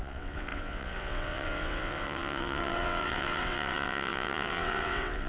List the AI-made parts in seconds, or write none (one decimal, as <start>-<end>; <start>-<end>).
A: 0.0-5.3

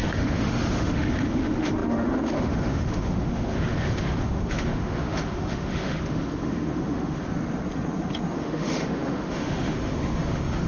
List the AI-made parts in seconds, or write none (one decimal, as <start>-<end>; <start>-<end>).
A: 0.0-7.2; 8.3-10.7

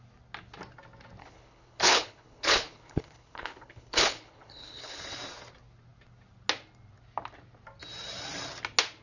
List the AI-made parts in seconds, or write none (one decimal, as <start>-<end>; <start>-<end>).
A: 1.2-5.0

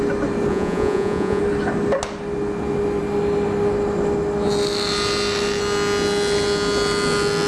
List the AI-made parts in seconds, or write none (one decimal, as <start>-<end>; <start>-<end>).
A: 0.5-1.4

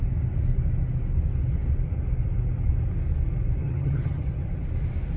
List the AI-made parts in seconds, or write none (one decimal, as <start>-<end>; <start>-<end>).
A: 3.6-4.2

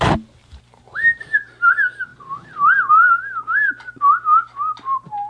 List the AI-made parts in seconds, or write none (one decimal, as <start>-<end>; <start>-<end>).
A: none